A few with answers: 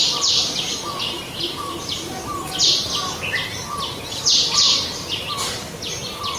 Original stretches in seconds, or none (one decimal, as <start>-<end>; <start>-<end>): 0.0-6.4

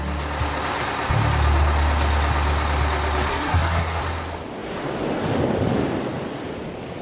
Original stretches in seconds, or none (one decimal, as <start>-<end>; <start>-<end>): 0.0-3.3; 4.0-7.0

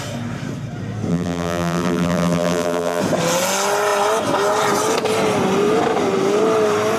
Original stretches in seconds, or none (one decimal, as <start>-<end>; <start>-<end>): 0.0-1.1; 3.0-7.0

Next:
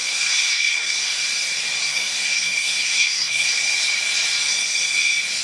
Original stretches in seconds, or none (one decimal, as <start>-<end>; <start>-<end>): 1.0-1.8; 3.5-5.4